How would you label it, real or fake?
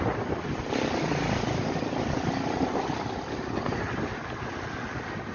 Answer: real